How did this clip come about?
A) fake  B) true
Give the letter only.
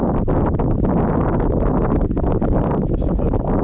B